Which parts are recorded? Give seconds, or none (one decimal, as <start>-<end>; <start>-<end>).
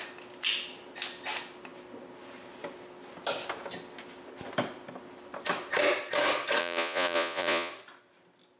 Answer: 0.0-6.6; 7.7-8.6